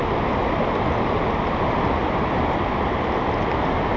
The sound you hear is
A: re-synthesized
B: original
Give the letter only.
B